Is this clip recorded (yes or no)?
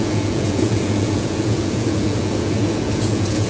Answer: no